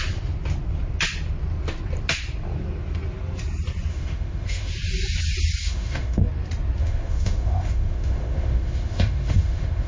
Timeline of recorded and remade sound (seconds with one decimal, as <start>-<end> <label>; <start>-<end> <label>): 0.0-3.9 recorded; 3.9-4.7 remade; 4.7-5.6 recorded; 5.6-6.2 remade; 6.2-6.8 recorded; 6.8-9.9 remade